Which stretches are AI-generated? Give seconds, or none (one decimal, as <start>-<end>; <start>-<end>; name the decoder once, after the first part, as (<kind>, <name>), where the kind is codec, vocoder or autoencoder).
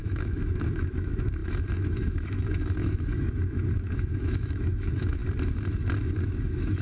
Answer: 0.0-5.2 (autoencoder, DAC-VAE); 6.0-6.8